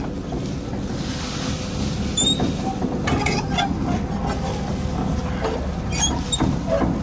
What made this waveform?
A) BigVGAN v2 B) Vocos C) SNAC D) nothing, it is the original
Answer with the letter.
D